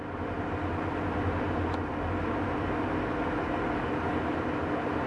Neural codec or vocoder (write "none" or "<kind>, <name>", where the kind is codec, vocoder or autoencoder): none